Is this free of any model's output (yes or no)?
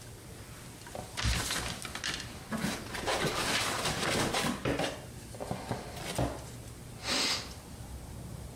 yes